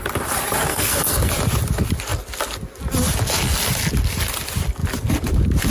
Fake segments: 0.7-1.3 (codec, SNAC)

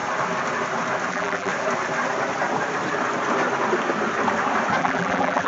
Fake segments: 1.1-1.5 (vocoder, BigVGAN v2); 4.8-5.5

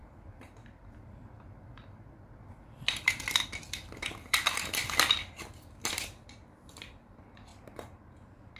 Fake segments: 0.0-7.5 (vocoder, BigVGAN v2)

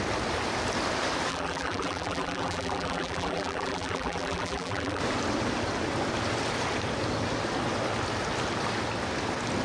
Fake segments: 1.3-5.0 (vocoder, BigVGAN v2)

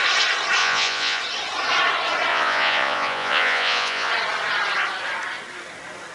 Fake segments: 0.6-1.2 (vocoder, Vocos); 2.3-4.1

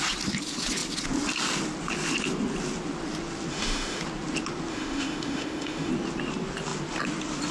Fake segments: 3.5-4.0 (autoencoder, DAC-VAE); 4.7-5.9

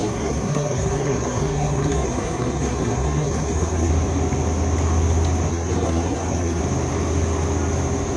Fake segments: 0.0-3.9 (codec, SNAC); 5.5-6.6